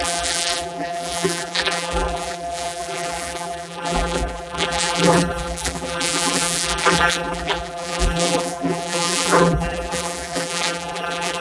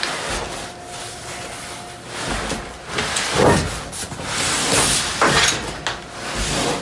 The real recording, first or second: second